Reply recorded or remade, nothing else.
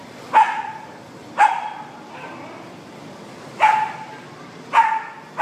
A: remade